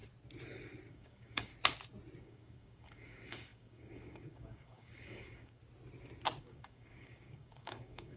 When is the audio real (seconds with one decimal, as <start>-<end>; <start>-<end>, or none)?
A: 0.0-0.9; 1.5-2.2; 5.6-6.4